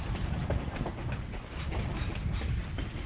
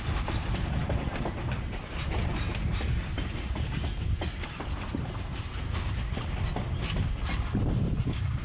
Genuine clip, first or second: second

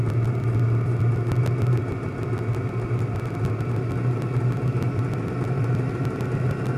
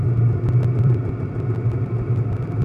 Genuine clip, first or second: first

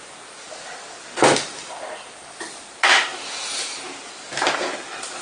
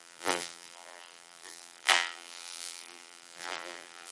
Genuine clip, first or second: first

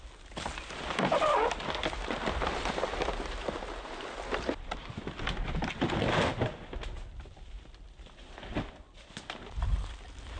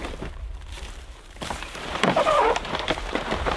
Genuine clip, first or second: first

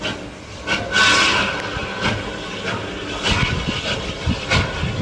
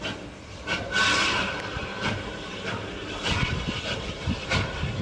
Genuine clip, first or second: first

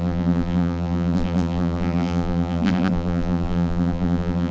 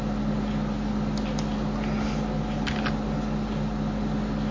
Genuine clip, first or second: second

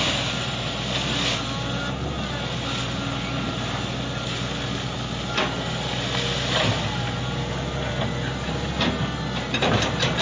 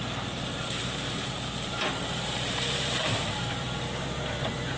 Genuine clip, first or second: first